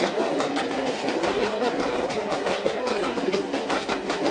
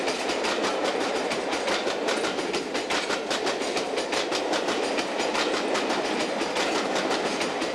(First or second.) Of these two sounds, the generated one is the first